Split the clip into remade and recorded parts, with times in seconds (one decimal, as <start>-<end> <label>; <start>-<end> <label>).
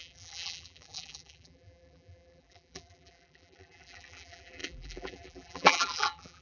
0.0-6.4 remade